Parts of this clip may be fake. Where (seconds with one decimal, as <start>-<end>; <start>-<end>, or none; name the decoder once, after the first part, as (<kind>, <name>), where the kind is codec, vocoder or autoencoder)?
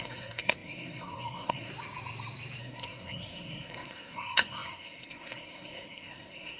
0.0-1.7 (codec, SNAC); 2.6-6.6